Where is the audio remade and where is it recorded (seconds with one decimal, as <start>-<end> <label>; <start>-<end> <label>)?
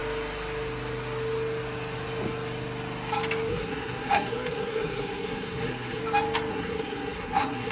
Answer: 0.0-3.5 recorded; 3.5-6.0 remade; 6.0-6.5 recorded; 6.5-7.7 remade